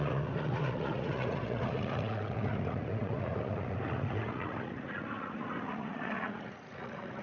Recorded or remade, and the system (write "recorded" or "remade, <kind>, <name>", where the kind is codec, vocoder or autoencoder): remade, vocoder, Vocos